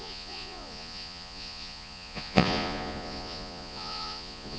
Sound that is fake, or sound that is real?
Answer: fake